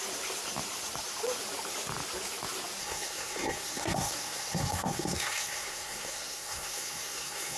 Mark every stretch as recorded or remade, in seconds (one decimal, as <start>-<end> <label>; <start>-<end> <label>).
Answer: 0.0-2.8 recorded; 2.8-7.6 remade